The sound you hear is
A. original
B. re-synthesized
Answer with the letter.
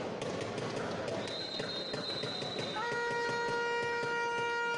A